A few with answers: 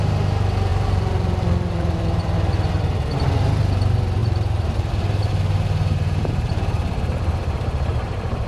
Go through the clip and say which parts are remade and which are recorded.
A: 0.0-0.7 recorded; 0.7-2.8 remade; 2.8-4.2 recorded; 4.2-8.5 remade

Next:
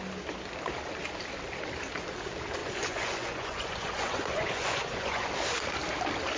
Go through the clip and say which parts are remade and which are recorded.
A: 0.0-2.6 recorded; 2.6-5.3 remade; 5.3-6.4 recorded

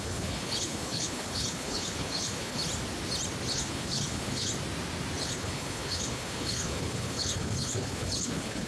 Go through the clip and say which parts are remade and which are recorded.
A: 0.0-2.6 remade; 2.6-3.5 recorded; 3.5-4.5 remade; 4.5-5.2 recorded; 5.2-8.7 remade

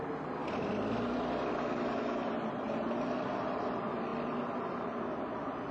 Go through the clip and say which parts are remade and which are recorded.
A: 0.0-5.7 recorded